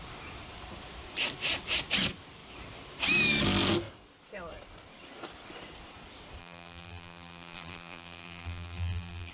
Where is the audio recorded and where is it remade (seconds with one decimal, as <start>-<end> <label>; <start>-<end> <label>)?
0.0-6.4 recorded; 6.4-9.3 remade